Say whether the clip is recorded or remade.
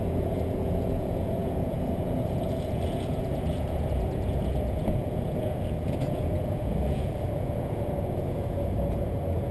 remade